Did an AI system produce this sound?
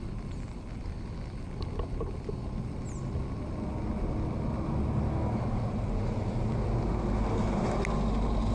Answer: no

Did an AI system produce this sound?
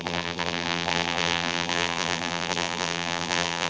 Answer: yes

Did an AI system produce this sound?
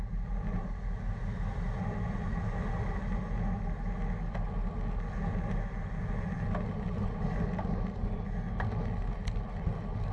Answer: no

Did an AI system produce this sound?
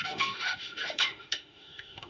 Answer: yes